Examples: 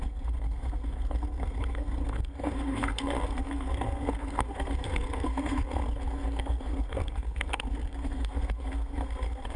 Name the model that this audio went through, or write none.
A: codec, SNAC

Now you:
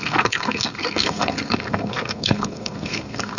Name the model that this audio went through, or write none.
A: codec, SNAC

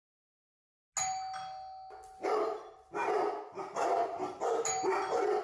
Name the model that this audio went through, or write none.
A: none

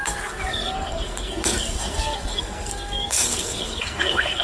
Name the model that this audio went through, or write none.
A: codec, SNAC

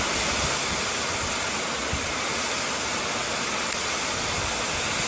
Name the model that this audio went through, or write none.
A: none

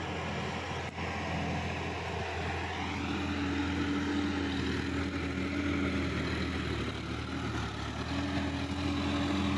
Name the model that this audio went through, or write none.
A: none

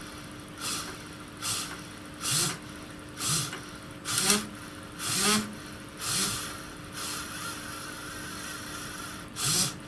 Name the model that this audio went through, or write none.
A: none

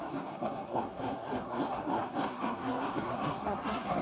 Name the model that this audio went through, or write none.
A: codec, SNAC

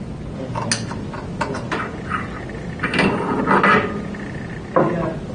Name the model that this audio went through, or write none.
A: none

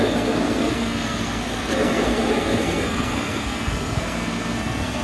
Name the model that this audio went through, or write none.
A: codec, SNAC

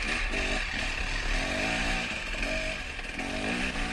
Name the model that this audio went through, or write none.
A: none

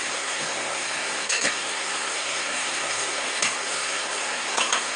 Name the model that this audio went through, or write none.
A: codec, SNAC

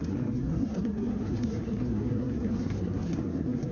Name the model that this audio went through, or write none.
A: codec, SNAC